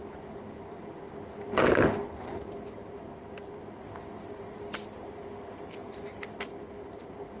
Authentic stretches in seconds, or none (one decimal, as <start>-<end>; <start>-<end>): 0.0-7.4